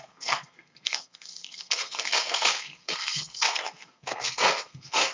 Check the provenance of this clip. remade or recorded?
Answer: remade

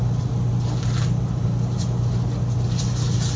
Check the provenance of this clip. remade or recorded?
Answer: recorded